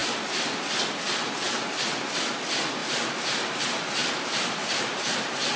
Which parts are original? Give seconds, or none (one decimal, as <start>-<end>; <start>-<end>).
1.3-2.8; 3.6-4.0; 4.8-5.6